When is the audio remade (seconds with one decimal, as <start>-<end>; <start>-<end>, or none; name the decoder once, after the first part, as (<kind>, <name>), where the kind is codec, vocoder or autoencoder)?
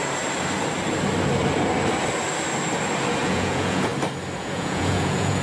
3.2-3.9 (vocoder, Vocos); 4.4-5.4